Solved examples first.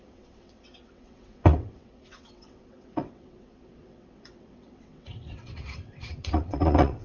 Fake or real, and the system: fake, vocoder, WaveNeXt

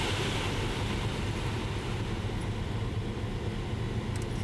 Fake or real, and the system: real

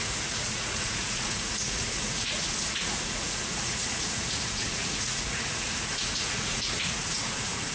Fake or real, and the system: fake, vocoder, Vocos